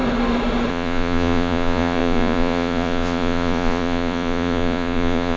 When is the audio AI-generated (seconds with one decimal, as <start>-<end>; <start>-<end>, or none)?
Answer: 0.7-5.4